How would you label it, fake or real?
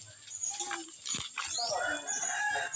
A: real